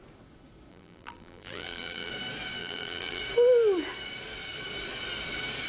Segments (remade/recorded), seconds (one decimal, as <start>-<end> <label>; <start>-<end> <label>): 0.0-0.7 recorded; 0.7-2.1 remade; 2.1-2.6 recorded; 2.6-3.2 remade; 3.2-5.7 recorded